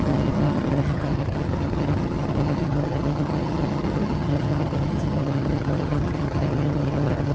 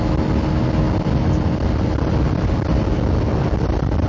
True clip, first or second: second